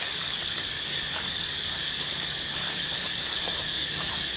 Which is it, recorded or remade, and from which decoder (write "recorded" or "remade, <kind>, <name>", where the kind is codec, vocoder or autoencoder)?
remade, codec, DAC